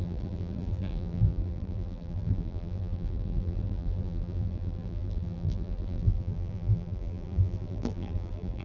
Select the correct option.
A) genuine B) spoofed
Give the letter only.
B